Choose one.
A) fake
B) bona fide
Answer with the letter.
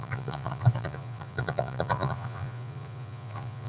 A